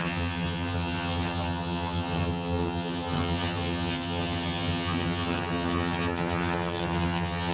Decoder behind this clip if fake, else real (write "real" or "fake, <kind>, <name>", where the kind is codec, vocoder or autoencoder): fake, vocoder, HiFi-GAN